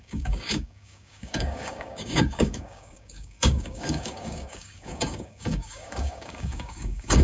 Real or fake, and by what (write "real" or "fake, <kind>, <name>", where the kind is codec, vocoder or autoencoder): fake, codec, DAC